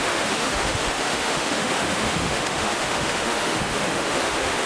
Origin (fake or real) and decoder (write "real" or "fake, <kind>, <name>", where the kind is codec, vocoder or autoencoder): fake, autoencoder, DAC-VAE